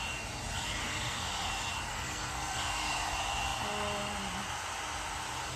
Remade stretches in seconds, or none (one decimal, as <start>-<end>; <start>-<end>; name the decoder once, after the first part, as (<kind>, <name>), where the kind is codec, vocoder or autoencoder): 0.8-1.5 (codec, SNAC); 1.9-2.9